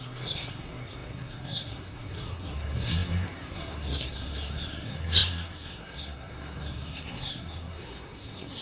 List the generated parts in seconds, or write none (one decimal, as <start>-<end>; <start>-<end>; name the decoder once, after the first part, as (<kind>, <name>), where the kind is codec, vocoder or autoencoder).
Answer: 0.0-8.6 (codec, SNAC)